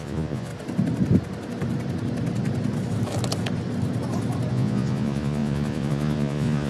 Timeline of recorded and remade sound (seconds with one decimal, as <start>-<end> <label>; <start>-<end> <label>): 0.0-0.5 remade; 0.5-4.5 recorded; 4.5-6.7 remade